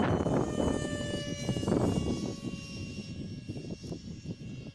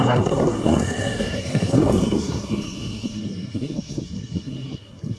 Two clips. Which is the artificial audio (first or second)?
second